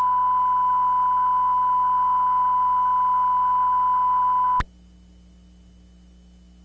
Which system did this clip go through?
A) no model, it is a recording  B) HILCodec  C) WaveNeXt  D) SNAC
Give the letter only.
A